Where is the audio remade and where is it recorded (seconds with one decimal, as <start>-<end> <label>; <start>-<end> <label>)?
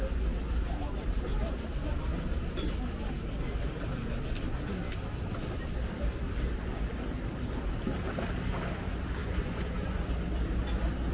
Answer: 0.0-9.2 recorded; 9.2-10.0 remade; 10.0-11.1 recorded